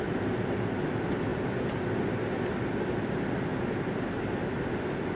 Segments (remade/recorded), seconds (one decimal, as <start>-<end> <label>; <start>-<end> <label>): 0.0-5.2 recorded